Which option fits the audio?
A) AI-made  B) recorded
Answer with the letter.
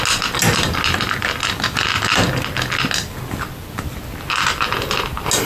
B